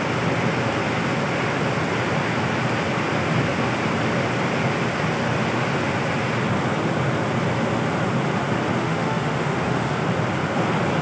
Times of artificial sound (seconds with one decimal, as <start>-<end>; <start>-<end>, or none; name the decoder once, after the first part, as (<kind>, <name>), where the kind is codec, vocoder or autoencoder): 8.8-9.9 (autoencoder, DAC-VAE)